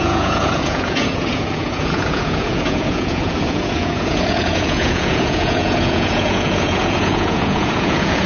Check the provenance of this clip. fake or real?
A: fake